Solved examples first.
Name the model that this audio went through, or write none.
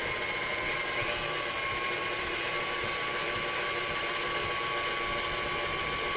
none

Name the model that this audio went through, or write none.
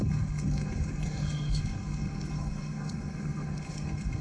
codec, SNAC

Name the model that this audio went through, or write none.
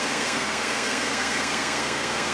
codec, SNAC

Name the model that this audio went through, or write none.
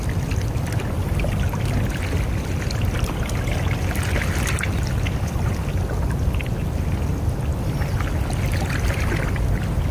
none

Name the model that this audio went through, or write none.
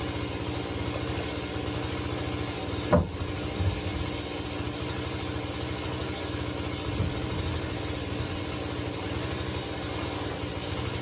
none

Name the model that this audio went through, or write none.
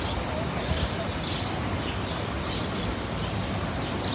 none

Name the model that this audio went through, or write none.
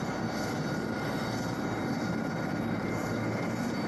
none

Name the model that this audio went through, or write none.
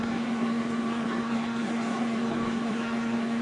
codec, SNAC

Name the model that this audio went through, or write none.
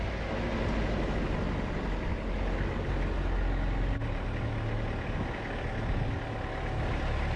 none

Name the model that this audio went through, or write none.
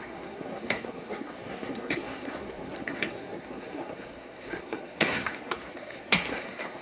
codec, SNAC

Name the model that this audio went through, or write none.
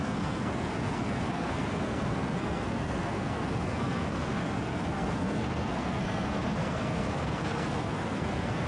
codec, SNAC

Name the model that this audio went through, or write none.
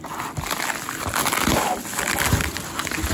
none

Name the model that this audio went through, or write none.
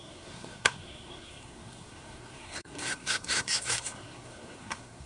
codec, SNAC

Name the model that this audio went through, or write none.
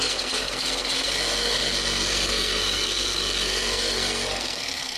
codec, SNAC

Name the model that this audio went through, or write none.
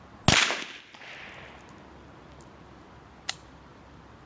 none